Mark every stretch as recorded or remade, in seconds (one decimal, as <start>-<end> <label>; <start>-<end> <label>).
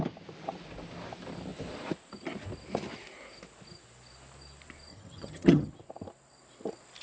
0.0-4.9 recorded; 4.9-5.7 remade; 5.7-7.0 recorded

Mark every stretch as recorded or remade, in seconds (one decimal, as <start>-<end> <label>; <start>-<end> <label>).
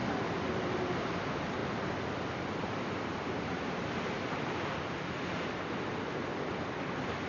0.0-7.3 recorded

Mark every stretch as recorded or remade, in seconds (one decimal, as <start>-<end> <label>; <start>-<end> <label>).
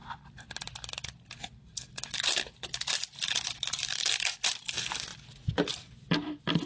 0.0-6.7 recorded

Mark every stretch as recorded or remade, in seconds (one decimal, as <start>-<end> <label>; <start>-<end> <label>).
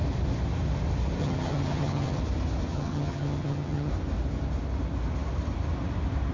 0.0-1.2 recorded; 1.2-2.2 remade; 2.2-2.7 recorded; 2.7-3.9 remade; 3.9-6.3 recorded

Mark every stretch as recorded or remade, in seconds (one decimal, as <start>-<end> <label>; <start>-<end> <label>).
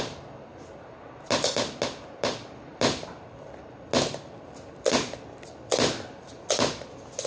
0.0-7.3 recorded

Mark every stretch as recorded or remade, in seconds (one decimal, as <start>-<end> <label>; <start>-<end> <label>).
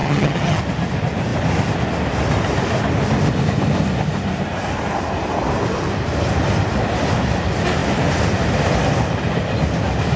0.0-0.6 remade; 0.6-10.2 recorded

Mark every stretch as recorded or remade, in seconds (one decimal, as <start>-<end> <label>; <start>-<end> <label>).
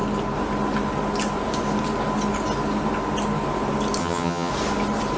0.0-4.0 recorded; 4.0-4.5 remade; 4.5-5.2 recorded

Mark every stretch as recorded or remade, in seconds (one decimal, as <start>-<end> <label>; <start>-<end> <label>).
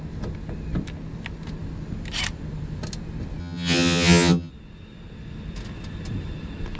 0.0-3.4 recorded; 3.4-4.5 remade; 4.5-6.8 recorded